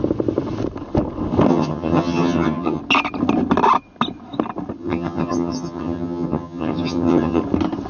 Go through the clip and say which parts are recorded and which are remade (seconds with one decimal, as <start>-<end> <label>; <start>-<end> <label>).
0.0-1.5 recorded; 1.5-2.8 remade; 2.8-4.8 recorded; 4.8-7.4 remade; 7.4-7.9 recorded